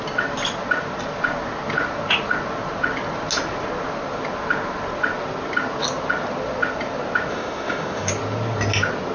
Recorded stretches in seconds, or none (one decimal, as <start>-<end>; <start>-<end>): 0.0-7.3; 8.1-9.1